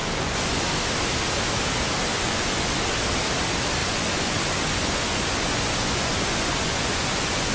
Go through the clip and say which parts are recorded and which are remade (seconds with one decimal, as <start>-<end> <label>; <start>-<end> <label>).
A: 0.0-0.8 remade; 0.8-2.1 recorded; 2.1-2.8 remade; 2.8-3.8 recorded; 3.8-7.5 remade